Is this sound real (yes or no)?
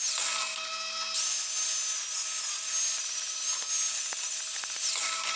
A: yes